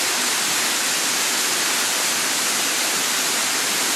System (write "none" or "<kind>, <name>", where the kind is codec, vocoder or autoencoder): none